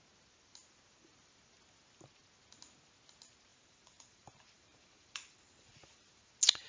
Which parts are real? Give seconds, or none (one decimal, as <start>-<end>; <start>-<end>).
0.0-3.5; 6.3-6.7